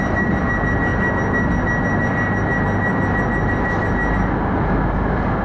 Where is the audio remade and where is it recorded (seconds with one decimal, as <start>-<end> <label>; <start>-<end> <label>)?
0.0-5.4 recorded